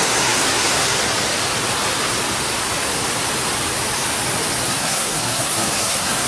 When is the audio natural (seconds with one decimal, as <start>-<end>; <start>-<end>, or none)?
1.0-4.7